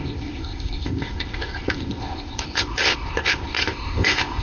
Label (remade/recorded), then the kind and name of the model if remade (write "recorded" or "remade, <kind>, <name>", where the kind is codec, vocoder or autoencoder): remade, codec, ZipCodec